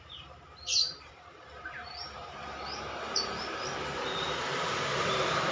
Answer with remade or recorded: remade